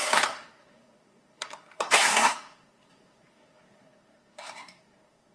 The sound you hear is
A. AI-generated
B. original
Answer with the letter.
A